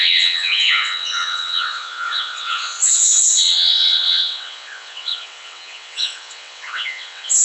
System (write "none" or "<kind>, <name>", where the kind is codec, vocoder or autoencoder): vocoder, WaveNeXt